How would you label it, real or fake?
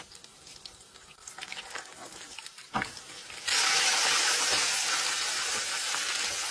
real